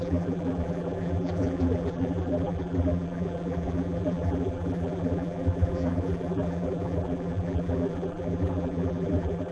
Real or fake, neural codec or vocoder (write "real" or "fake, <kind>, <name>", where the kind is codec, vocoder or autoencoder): fake, vocoder, BigVGAN v2